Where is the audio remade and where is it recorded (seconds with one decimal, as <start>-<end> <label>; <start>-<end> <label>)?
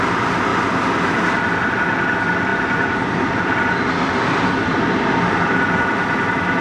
0.0-0.5 remade; 0.5-1.7 recorded; 1.7-6.6 remade